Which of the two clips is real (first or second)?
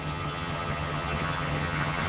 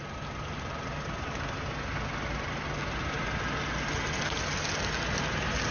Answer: second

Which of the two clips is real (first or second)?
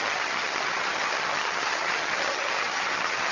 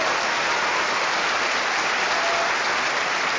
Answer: second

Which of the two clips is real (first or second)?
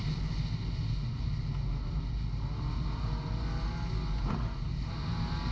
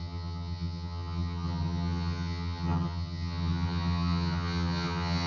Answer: first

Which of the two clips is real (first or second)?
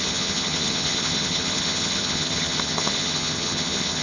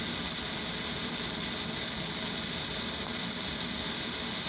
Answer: second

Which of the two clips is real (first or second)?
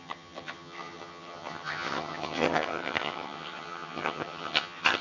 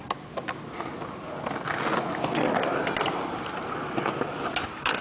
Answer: second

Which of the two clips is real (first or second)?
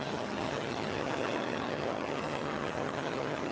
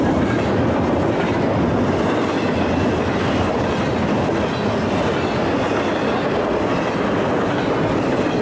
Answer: second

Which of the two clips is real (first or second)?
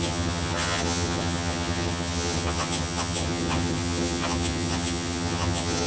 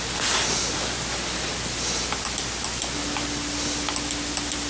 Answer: second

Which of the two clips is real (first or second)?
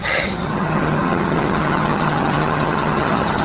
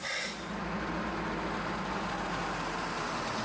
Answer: second